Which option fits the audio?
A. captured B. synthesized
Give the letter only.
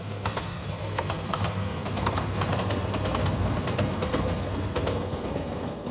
B